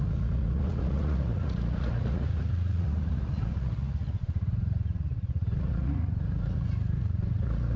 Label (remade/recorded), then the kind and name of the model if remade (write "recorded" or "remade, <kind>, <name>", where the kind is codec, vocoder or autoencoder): remade, vocoder, Vocos